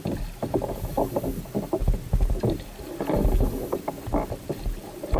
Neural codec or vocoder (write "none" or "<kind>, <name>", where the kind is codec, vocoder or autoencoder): none